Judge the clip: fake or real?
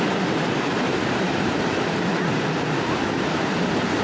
fake